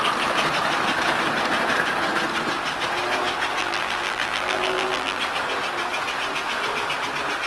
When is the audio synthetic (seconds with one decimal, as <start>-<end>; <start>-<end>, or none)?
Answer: 3.6-5.2